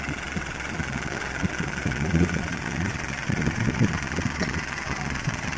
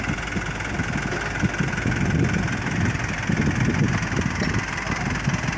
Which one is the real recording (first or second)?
second